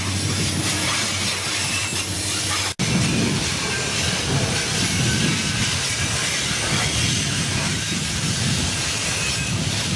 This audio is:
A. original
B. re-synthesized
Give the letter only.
A